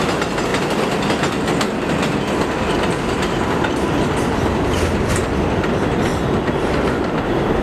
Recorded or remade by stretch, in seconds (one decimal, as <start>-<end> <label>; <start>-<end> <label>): 0.0-6.1 recorded; 6.1-7.6 remade